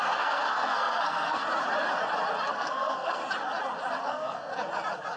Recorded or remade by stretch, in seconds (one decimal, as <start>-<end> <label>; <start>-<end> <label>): 0.0-1.4 remade; 1.4-2.5 recorded; 2.5-3.2 remade; 3.2-4.0 recorded; 4.0-4.5 remade; 4.5-5.2 recorded